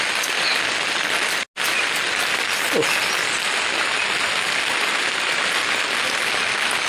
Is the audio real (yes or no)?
yes